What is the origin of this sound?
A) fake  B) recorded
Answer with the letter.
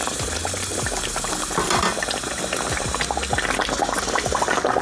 B